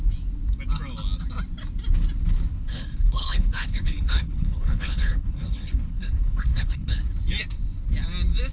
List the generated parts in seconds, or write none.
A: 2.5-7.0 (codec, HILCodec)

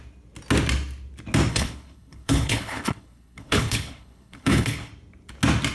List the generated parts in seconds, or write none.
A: 1.5-4.9 (codec, HILCodec)

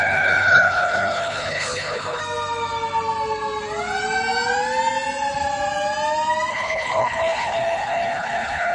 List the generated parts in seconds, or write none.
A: 0.0-2.2 (codec, HILCodec); 6.5-8.7

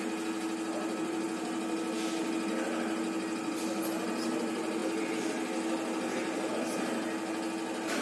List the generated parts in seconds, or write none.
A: none

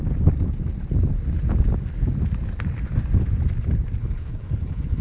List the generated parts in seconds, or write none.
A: 4.0-5.0 (codec, HILCodec)

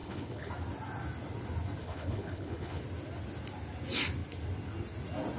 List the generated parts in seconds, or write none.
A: 0.0-0.5 (codec, HILCodec); 1.8-2.8

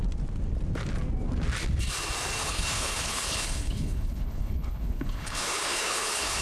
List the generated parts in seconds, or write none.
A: 2.4-6.4 (codec, HILCodec)